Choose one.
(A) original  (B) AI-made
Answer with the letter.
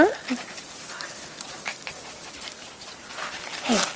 A